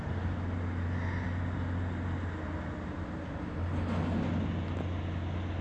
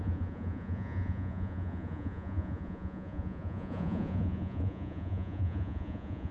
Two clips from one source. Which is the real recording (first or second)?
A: first